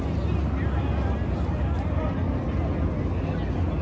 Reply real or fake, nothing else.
real